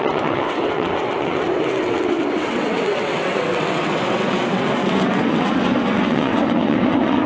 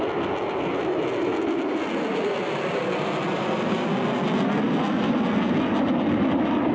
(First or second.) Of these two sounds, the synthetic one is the first